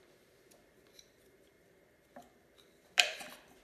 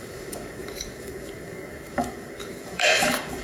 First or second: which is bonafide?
first